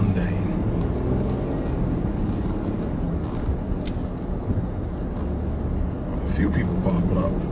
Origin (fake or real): real